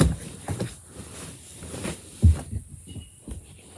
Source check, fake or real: fake